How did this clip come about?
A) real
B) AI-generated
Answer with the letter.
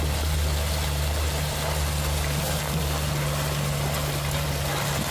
A